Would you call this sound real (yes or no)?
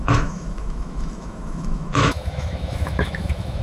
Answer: no